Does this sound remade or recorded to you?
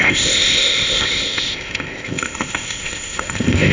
remade